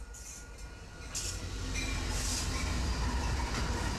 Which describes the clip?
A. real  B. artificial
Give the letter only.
A